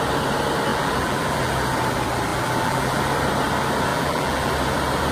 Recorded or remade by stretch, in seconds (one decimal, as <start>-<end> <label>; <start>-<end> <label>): 0.0-0.7 recorded; 0.7-1.5 remade; 1.5-2.3 recorded; 2.3-3.0 remade; 3.0-3.9 recorded; 3.9-4.5 remade; 4.5-5.1 recorded